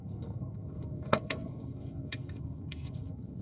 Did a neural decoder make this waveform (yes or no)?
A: yes